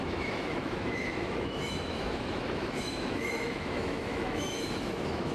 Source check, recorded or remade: remade